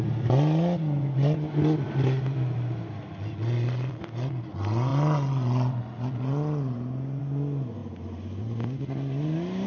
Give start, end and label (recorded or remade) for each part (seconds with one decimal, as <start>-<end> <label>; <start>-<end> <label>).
0.0-9.7 recorded